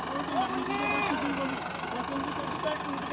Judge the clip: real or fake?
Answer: real